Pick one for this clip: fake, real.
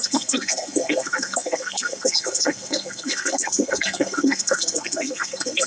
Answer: fake